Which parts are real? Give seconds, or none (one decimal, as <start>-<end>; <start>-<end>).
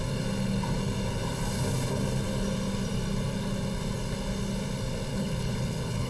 0.0-5.1